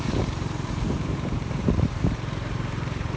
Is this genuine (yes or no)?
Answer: no